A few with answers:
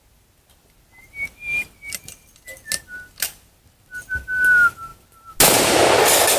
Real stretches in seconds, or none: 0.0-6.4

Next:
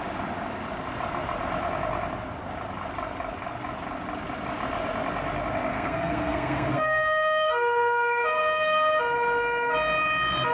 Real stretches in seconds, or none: 0.0-5.7; 9.0-10.5

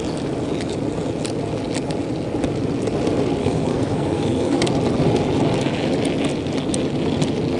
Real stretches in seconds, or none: 0.0-3.4; 4.7-7.6